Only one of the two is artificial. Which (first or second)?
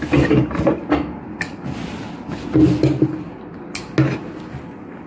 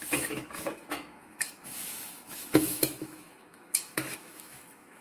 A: second